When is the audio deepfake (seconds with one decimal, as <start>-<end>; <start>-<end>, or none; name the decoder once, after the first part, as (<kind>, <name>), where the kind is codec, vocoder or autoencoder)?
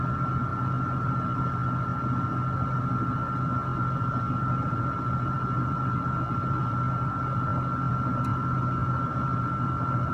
none